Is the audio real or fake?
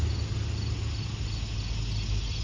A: real